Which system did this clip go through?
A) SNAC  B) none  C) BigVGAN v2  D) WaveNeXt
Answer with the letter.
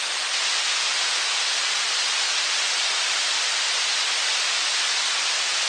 B